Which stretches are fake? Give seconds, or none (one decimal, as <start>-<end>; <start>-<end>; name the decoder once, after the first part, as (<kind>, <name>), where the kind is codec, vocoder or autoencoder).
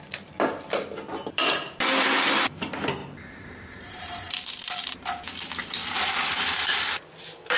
3.0-5.0 (vocoder, BigVGAN v2); 5.8-6.8